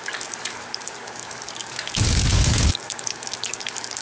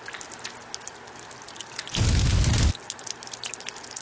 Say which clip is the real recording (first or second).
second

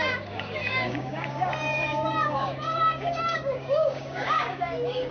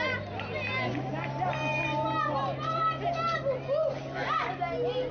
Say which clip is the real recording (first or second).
second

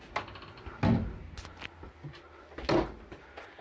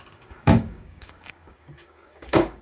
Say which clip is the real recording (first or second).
first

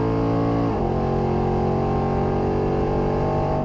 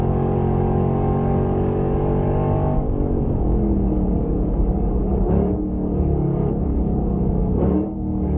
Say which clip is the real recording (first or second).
first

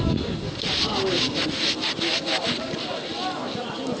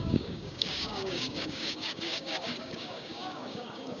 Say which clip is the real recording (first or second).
first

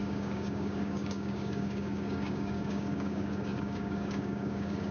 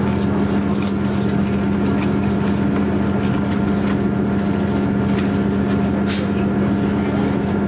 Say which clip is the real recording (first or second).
second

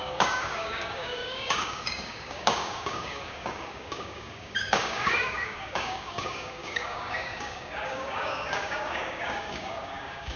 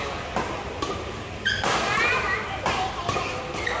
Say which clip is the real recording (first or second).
second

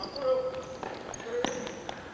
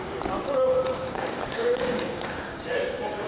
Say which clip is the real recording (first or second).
first